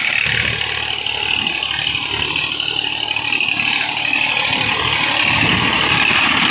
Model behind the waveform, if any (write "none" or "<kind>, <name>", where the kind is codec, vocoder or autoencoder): none